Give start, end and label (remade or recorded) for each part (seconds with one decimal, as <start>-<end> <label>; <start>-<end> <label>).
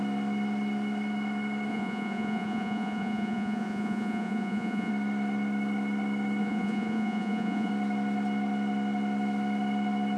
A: 0.0-1.7 recorded; 1.7-4.9 remade; 4.9-6.4 recorded; 6.4-7.7 remade; 7.7-10.2 recorded